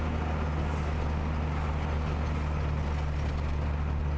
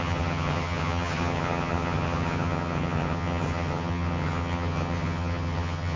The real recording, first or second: first